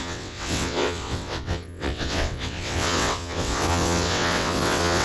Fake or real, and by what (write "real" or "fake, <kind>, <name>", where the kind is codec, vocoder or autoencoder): fake, vocoder, WaveNeXt